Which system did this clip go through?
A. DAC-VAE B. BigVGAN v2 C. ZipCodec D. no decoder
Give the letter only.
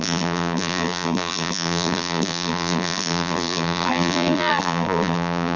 B